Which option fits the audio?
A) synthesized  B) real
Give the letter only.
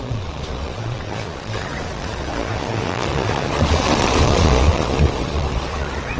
A